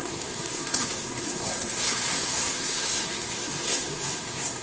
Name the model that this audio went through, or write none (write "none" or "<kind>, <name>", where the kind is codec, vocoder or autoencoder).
codec, SNAC